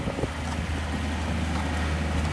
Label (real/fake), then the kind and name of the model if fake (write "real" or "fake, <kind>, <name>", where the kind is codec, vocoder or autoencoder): real